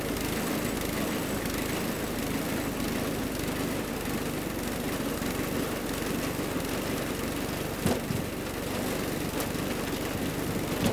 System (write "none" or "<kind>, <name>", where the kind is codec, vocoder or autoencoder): none